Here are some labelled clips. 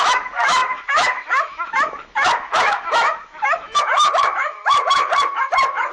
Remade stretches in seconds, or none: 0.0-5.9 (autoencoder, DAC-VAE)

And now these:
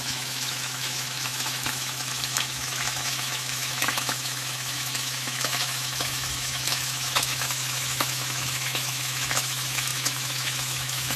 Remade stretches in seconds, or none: 0.0-11.2 (autoencoder, DAC-VAE)

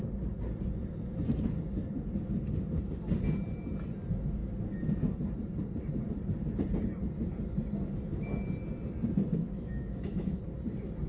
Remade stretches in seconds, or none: 9.3-10.4 (autoencoder, DAC-VAE)

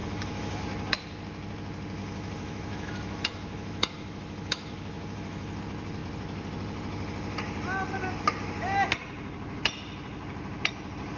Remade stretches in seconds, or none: 0.0-0.6 (autoencoder, DAC-VAE); 2.0-5.6

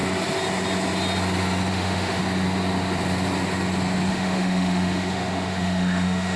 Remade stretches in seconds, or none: 1.7-2.2 (autoencoder, DAC-VAE); 4.1-6.4

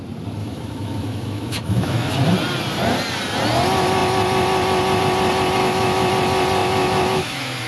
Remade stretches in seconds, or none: 0.4-2.1 (autoencoder, DAC-VAE); 5.6-6.1; 6.6-7.7

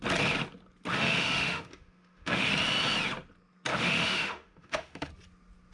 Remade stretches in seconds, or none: 0.9-2.5 (autoencoder, DAC-VAE); 3.7-5.1